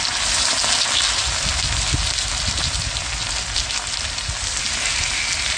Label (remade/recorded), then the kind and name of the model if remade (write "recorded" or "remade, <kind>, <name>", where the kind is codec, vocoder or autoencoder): recorded